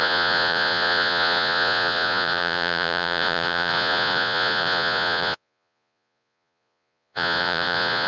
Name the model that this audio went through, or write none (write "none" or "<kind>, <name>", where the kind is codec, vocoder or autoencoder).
vocoder, Vocos